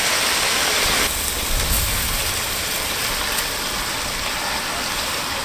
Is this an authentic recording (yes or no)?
no